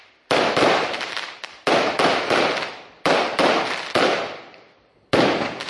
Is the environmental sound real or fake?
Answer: fake